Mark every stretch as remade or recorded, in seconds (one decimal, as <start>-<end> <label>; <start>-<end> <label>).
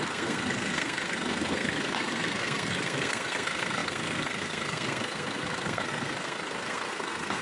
0.0-7.4 remade